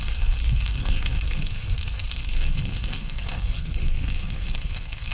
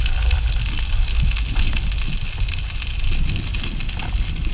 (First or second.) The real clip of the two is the second